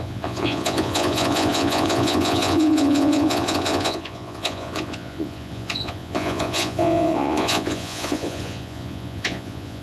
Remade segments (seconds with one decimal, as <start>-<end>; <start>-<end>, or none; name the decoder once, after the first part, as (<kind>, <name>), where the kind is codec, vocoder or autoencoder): 0.0-9.8 (vocoder, Vocos)